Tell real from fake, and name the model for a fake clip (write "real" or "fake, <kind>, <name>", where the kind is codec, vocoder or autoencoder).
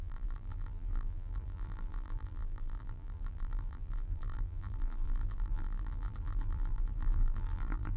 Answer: fake, vocoder, BigVGAN v2